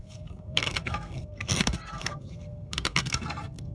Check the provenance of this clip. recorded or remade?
remade